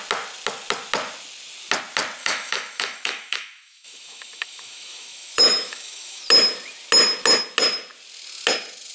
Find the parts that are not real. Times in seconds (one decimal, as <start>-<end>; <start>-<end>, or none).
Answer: 2.2-6.2